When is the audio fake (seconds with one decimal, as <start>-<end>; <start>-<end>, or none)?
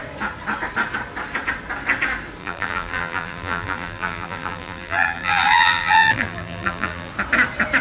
2.4-7.1